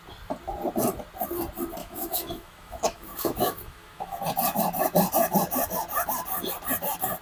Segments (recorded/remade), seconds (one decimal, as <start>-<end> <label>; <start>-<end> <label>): 0.0-1.8 recorded; 1.8-4.2 remade; 4.2-7.2 recorded